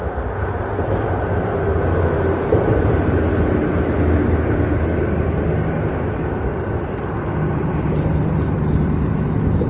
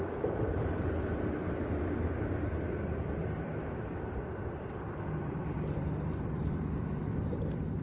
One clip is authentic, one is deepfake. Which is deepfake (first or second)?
second